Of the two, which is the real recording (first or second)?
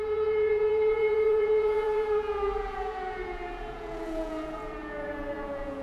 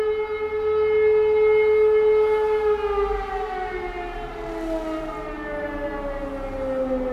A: second